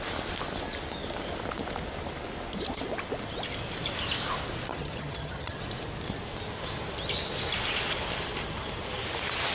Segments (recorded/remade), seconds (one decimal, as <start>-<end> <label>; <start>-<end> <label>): 0.0-4.7 recorded; 4.7-5.6 remade; 5.6-9.5 recorded